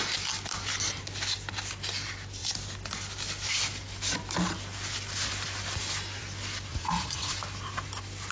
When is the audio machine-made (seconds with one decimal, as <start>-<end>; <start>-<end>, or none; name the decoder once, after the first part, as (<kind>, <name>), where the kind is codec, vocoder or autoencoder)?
6.7-7.3 (vocoder, Vocos)